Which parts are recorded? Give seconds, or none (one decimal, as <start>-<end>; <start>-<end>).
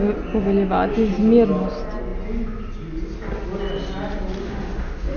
0.0-4.4